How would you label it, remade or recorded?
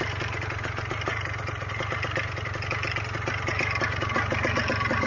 recorded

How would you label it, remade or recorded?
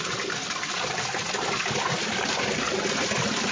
recorded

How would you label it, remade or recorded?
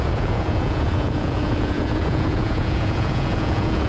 remade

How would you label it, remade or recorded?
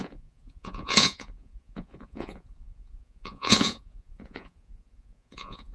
remade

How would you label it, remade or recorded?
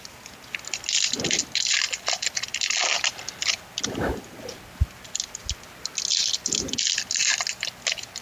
recorded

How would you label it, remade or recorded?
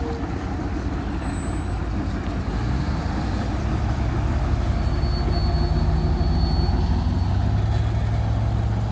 recorded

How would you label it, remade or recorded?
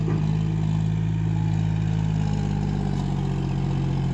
recorded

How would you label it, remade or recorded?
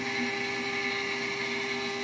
recorded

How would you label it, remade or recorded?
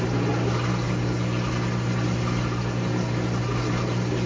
recorded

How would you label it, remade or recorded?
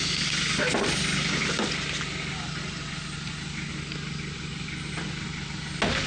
recorded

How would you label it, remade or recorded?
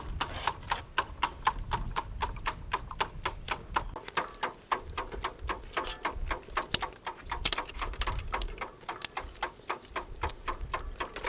recorded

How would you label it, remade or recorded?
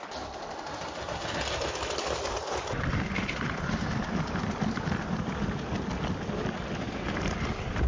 recorded